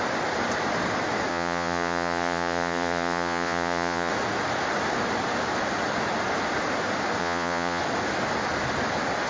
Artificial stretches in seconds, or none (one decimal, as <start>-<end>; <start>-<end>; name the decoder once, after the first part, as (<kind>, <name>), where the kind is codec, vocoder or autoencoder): 1.3-4.1 (vocoder, Vocos); 7.2-7.8